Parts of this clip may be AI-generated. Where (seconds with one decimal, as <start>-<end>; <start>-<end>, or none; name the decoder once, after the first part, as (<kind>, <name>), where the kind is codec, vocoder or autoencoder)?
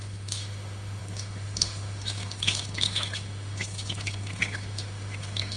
0.0-5.6 (autoencoder, DAC-VAE)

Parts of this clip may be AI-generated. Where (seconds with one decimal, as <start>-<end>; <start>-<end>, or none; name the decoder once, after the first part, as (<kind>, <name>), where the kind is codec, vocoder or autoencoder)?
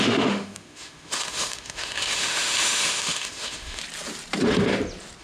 0.0-3.8 (autoencoder, DAC-VAE)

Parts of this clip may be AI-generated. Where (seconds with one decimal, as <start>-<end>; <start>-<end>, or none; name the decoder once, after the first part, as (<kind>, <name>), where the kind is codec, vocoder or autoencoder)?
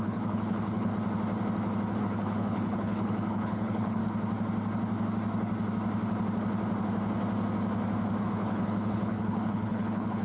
0.0-0.9 (codec, HILCodec); 2.0-4.0; 8.2-10.2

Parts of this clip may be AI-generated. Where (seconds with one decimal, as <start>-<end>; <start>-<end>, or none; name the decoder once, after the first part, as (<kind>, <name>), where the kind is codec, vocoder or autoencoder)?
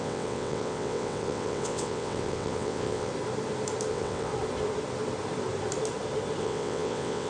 0.0-3.1 (vocoder, WaveNeXt); 3.9-4.3; 6.4-7.3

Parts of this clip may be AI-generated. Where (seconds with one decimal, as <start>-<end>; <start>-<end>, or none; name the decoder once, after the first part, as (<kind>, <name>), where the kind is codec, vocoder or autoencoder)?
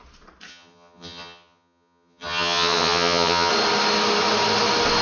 0.5-3.5 (vocoder, HiFi-GAN)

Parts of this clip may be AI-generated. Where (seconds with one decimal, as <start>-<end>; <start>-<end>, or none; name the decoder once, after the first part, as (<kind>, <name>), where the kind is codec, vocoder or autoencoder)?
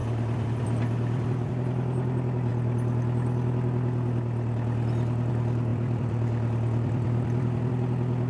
0.0-1.5 (vocoder, BigVGAN v2); 5.7-7.7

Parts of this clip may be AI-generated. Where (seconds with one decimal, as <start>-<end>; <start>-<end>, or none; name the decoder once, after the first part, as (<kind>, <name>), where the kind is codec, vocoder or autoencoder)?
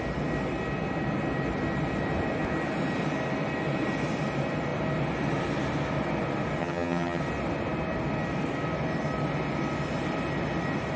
6.6-7.2 (vocoder, HiFi-GAN)